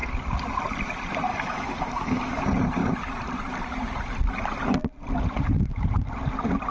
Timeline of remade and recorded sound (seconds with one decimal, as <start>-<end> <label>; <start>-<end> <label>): 0.0-1.3 recorded; 1.3-2.4 remade; 2.4-6.7 recorded

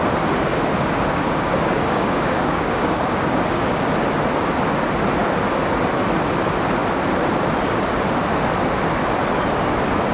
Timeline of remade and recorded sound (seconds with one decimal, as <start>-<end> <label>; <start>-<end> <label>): 0.0-0.5 recorded; 0.5-3.8 remade; 3.8-10.1 recorded

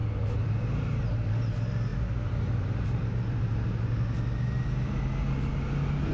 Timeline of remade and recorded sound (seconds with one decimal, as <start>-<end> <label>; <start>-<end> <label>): 0.0-6.1 recorded

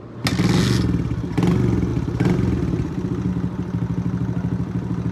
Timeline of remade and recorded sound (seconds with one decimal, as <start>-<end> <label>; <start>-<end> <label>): 0.0-1.9 recorded; 1.9-3.3 remade; 3.3-5.1 recorded

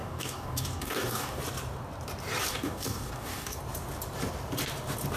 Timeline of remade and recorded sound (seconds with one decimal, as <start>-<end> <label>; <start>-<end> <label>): 0.0-1.4 remade; 1.4-2.5 recorded; 2.5-3.6 remade; 3.6-5.2 recorded

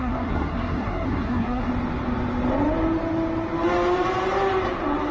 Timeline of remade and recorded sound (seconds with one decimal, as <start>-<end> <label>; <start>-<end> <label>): 0.0-1.7 remade; 1.7-5.1 recorded

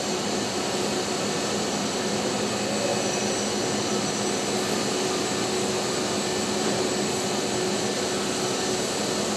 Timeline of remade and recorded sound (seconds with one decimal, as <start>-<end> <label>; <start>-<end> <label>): 0.0-9.4 recorded